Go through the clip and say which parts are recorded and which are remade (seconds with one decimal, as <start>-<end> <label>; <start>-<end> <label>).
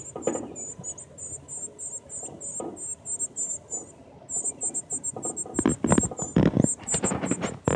0.0-7.8 recorded